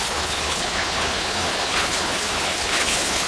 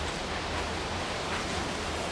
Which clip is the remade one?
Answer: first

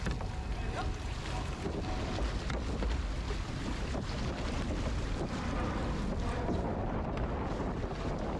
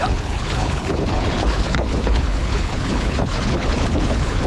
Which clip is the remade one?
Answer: second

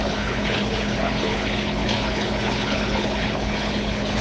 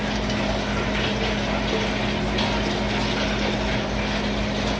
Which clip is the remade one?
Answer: first